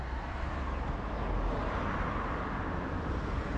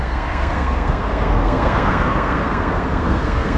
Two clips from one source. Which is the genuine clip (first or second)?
first